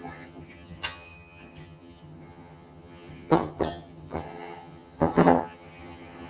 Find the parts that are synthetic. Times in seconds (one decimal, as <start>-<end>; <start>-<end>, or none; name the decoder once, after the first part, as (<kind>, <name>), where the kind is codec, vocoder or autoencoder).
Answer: 0.0-6.3 (vocoder, HiFi-GAN)

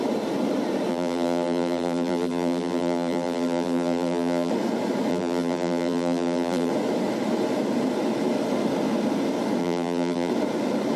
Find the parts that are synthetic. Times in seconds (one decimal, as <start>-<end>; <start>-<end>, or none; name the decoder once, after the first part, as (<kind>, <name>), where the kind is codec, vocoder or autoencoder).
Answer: 0.9-4.5 (vocoder, BigVGAN v2); 5.1-6.7; 9.6-10.3

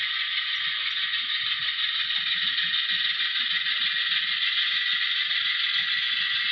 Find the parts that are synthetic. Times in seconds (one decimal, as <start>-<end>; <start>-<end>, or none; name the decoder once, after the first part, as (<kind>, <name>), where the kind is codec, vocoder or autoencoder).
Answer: none

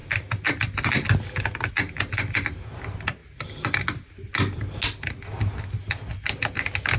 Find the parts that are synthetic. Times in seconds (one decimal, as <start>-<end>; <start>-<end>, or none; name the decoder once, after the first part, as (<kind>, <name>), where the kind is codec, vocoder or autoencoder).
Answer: none

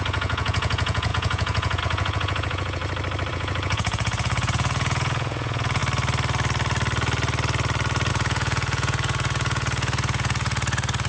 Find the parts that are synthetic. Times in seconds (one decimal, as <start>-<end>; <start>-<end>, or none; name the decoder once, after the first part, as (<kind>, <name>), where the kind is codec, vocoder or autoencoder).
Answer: 0.0-2.8 (vocoder, Vocos); 3.3-5.8; 8.1-11.1

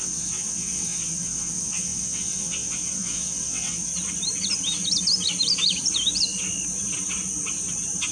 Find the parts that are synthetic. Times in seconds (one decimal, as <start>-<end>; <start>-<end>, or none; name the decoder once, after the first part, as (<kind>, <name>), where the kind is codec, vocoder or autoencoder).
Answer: 0.0-3.9 (vocoder, WaveNeXt)